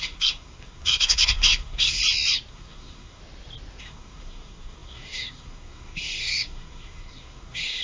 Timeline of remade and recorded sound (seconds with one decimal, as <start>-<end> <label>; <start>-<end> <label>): 0.0-2.0 remade; 2.0-2.5 recorded; 2.5-3.2 remade; 3.2-3.8 recorded; 3.8-7.8 remade